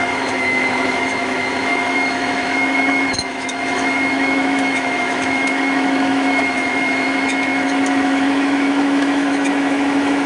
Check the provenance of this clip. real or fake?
fake